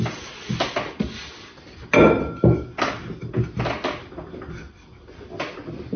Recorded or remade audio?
recorded